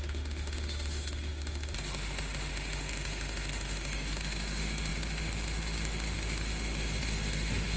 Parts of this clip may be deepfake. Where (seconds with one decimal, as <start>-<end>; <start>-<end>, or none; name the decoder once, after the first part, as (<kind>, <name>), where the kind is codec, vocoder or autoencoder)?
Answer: 0.0-7.8 (autoencoder, DAC-VAE)